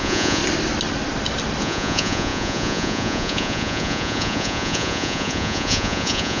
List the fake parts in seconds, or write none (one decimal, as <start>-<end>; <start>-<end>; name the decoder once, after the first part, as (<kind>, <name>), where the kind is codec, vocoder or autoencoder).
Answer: 0.0-0.4 (vocoder, Vocos); 1.6-6.4